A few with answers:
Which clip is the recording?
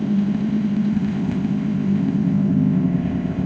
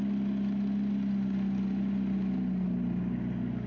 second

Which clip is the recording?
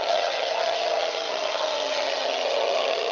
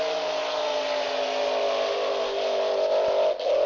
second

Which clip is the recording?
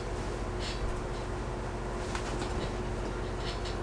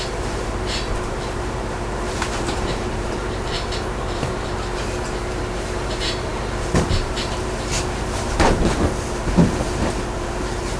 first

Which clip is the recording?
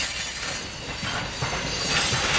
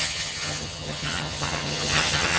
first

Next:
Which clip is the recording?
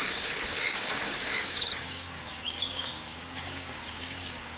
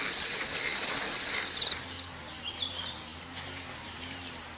second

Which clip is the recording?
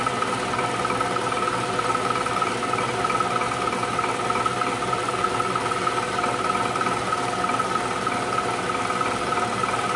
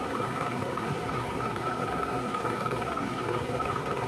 first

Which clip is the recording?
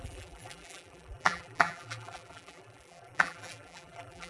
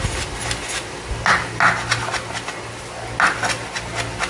second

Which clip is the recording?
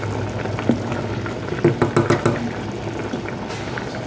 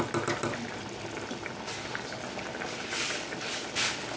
first